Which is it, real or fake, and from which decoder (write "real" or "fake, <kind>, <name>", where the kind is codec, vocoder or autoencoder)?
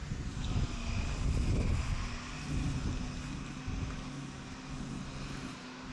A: real